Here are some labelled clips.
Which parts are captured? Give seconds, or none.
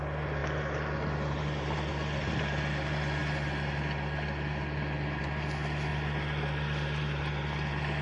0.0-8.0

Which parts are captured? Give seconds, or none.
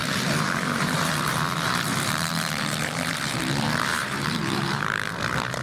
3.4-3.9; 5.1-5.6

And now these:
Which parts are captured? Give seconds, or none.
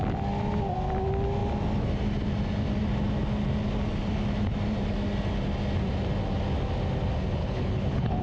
0.0-7.4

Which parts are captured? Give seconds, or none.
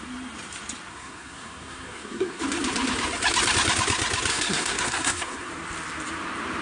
0.0-0.9; 2.4-4.3; 5.5-6.6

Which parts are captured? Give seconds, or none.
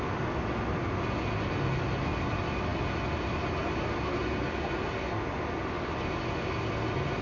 0.0-7.2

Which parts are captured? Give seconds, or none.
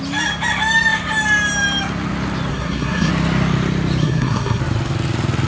0.0-2.5; 3.1-4.0; 4.6-5.5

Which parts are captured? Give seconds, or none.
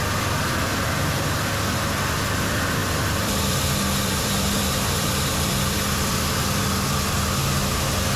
0.0-2.8; 6.7-8.2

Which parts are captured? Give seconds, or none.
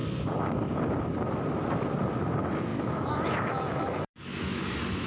0.0-2.7